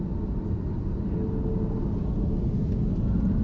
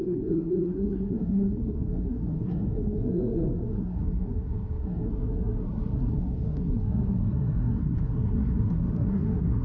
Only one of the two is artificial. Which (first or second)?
second